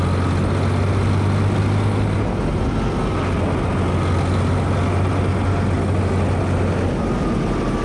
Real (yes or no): yes